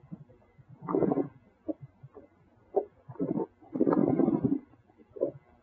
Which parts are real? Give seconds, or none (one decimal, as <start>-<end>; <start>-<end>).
0.0-4.0; 4.7-5.6